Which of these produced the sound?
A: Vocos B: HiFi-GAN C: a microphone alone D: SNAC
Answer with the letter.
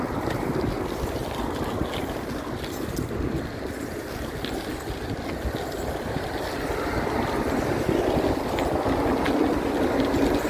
C